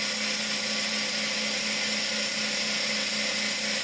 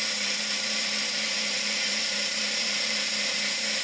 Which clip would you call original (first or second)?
first